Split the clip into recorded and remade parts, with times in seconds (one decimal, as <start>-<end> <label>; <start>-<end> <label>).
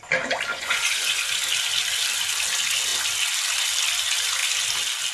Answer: 0.0-0.5 recorded; 0.5-1.2 remade; 1.2-5.1 recorded